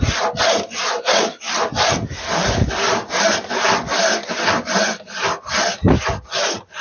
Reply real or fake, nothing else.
real